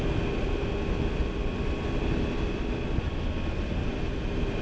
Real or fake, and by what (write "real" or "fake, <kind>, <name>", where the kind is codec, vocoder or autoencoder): real